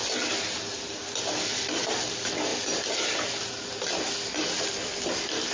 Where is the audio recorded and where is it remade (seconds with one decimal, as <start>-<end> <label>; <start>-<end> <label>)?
0.0-5.5 recorded